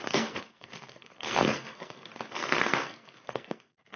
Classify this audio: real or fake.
fake